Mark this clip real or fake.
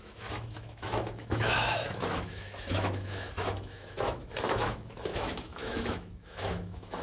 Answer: fake